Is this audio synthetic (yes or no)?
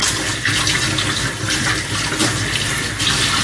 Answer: no